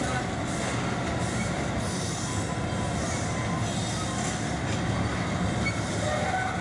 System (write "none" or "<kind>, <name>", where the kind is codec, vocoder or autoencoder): none